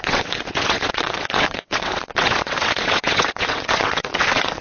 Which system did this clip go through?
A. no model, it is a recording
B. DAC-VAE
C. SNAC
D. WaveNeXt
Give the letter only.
D